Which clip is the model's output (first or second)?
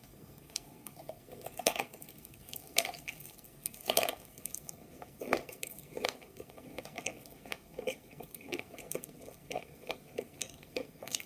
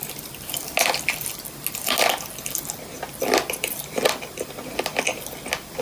first